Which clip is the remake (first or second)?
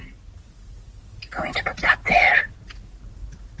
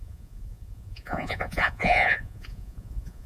second